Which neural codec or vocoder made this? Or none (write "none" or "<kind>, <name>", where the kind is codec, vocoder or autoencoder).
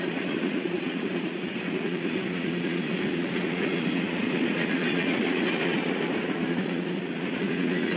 vocoder, Vocos